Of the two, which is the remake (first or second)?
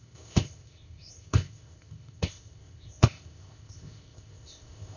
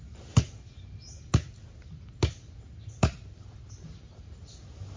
first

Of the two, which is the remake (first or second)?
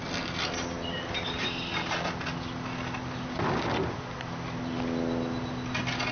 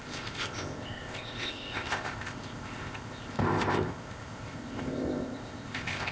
second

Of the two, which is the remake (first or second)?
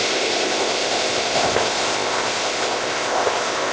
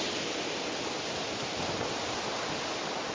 first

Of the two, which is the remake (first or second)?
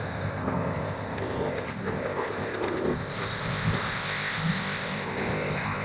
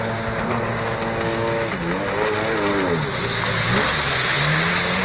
first